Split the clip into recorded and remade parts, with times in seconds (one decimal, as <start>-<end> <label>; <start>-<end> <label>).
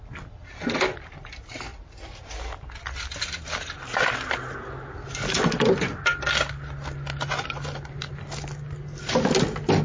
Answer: 0.0-9.8 recorded